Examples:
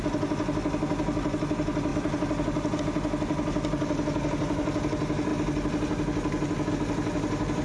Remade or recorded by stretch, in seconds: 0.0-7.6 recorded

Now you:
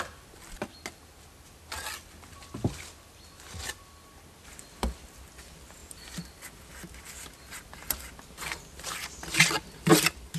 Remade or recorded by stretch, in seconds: 0.0-10.4 recorded

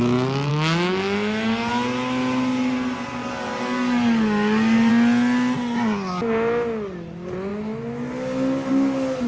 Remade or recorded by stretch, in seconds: 0.0-0.5 recorded; 0.5-1.7 remade; 1.7-3.2 recorded; 3.2-4.9 remade; 4.9-9.3 recorded

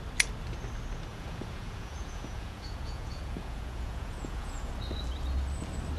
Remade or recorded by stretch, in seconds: 0.0-1.1 recorded; 1.1-4.7 remade; 4.7-6.0 recorded

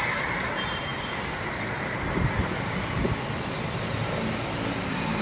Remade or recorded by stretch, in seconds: 0.0-5.2 recorded

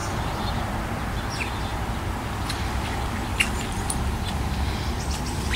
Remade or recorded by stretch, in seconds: 0.0-5.6 recorded

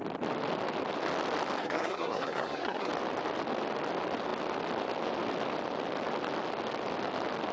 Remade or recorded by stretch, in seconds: 0.0-1.6 recorded; 1.6-2.9 remade; 2.9-7.5 recorded